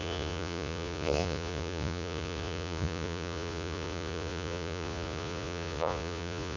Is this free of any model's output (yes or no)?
no